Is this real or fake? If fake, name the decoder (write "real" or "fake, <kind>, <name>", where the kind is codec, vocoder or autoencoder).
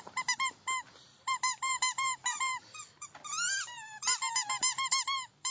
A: fake, vocoder, BigVGAN v2